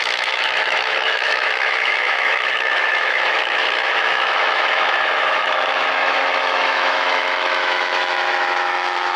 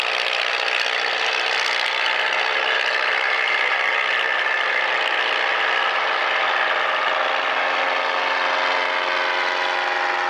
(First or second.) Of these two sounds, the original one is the second